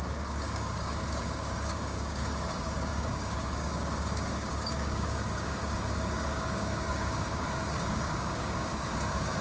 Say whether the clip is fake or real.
fake